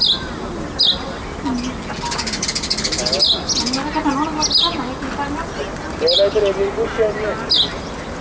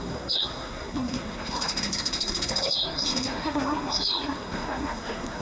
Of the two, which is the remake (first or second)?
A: second